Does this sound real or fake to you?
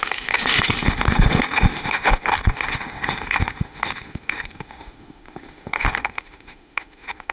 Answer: fake